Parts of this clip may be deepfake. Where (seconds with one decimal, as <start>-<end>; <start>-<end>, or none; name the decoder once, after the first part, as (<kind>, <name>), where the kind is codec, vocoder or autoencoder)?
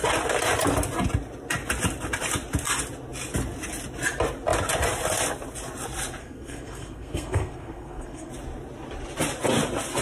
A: 6.2-8.3 (codec, SNAC)